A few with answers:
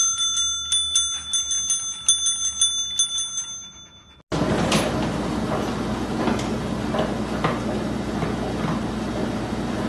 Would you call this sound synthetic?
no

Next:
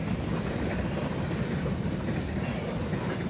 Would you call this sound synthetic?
no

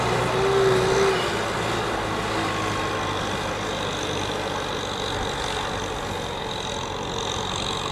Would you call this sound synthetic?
no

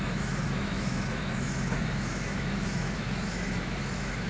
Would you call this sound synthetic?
yes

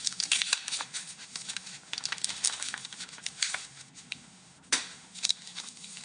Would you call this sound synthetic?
yes